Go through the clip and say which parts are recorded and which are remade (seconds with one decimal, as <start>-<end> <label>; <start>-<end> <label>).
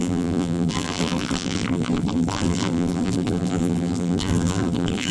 0.0-5.1 remade